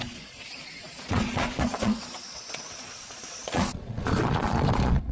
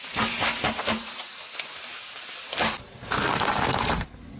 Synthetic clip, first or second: first